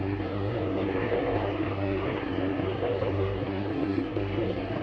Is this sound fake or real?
fake